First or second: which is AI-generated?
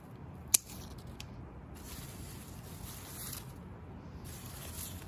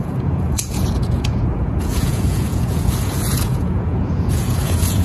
second